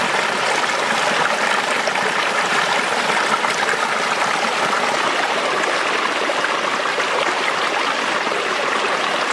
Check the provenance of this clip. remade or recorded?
recorded